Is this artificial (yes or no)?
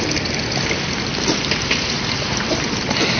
no